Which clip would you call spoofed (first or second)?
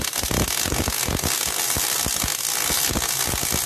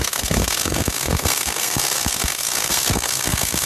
second